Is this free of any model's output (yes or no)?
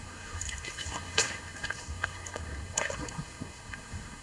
no